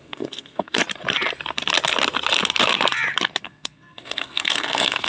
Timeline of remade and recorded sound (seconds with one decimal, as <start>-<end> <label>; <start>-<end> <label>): 0.0-0.8 remade; 0.8-3.4 recorded; 3.4-5.1 remade